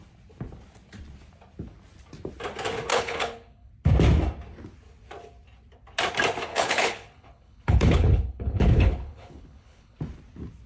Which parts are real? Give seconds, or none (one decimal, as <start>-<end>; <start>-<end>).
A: 0.0-2.9; 3.7-6.5; 10.0-10.7